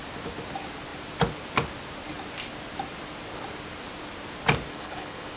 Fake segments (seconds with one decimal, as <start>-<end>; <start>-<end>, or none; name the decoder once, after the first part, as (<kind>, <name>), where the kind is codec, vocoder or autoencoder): 4.7-5.4 (codec, HILCodec)